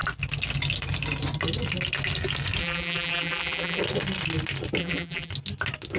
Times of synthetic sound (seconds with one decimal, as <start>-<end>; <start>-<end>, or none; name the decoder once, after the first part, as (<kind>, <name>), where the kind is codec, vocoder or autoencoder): 2.6-3.8 (vocoder, BigVGAN v2); 4.8-5.3